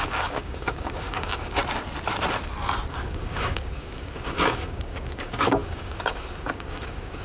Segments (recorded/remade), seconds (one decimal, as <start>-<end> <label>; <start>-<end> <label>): 0.0-1.6 remade; 1.6-2.9 recorded; 2.9-7.2 remade